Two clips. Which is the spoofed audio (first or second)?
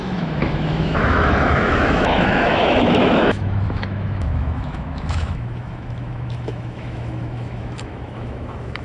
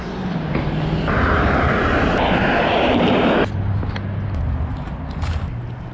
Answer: first